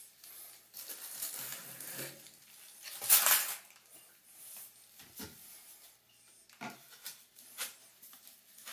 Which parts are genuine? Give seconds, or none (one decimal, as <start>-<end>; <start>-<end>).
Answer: 0.0-8.7